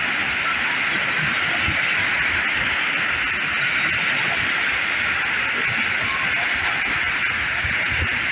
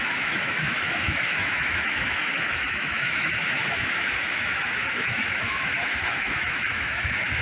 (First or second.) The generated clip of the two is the second